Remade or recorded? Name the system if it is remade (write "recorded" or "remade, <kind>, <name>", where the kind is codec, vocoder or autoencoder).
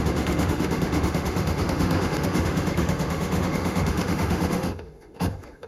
remade, autoencoder, DAC-VAE